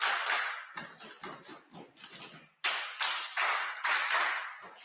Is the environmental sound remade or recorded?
recorded